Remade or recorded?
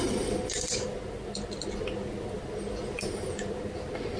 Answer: recorded